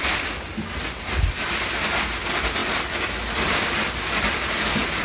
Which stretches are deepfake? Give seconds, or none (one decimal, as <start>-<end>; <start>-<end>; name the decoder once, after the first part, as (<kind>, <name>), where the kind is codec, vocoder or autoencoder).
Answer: none